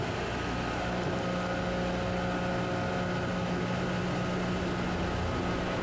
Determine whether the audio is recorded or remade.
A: recorded